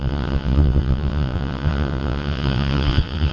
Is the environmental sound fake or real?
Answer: fake